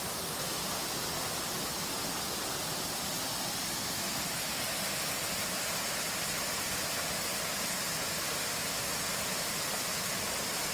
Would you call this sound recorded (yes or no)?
yes